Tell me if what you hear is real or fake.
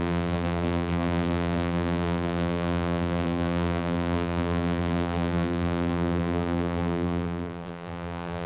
fake